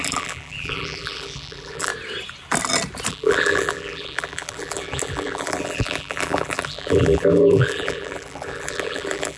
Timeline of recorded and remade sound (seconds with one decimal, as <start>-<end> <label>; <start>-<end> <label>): 0.0-1.9 remade; 1.9-3.1 recorded; 3.1-9.4 remade